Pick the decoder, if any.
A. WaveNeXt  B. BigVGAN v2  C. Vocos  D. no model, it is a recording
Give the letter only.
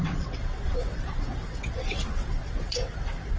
A